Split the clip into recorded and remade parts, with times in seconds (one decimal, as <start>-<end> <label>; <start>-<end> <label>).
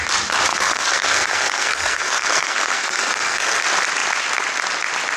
0.0-0.5 recorded; 0.5-3.6 remade; 3.6-5.2 recorded